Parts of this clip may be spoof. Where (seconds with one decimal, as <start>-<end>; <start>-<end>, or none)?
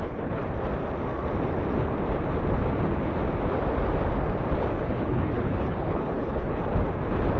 0.0-0.4; 4.8-6.6